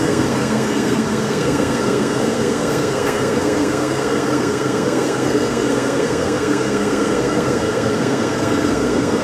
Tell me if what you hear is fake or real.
fake